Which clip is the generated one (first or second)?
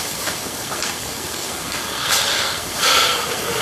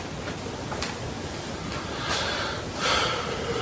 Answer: first